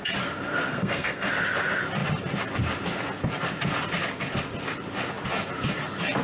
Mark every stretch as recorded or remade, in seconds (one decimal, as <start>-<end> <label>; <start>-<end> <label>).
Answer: 0.0-0.7 recorded; 0.7-1.3 remade; 1.3-6.2 recorded